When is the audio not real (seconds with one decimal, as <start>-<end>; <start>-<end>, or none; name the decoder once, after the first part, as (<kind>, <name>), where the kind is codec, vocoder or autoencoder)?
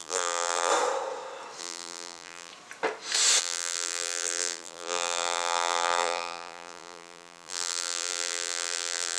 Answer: 0.0-0.7 (vocoder, BigVGAN v2); 1.6-2.5; 3.4-9.2